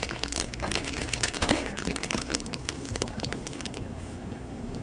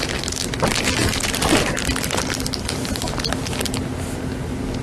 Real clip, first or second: second